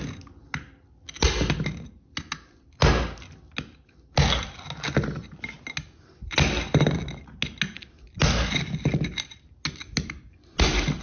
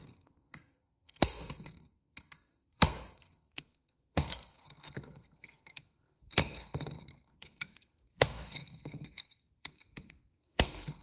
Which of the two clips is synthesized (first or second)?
second